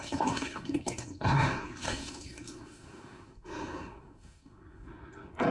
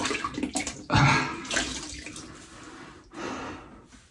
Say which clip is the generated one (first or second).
first